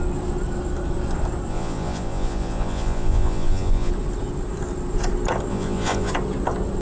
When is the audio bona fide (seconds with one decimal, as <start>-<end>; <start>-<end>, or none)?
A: 0.0-1.5; 3.9-5.5; 6.1-6.8